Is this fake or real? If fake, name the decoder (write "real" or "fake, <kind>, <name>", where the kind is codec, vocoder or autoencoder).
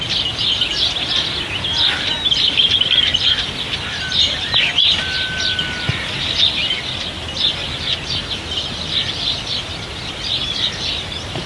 real